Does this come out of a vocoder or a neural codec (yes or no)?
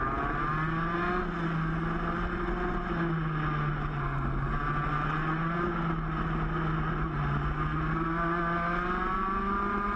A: no